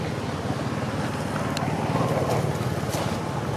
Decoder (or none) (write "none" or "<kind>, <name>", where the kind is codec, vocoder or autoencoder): none